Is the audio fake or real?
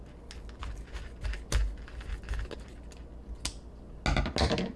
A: real